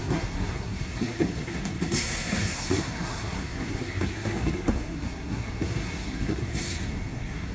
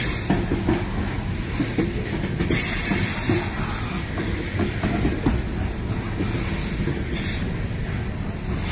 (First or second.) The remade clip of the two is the first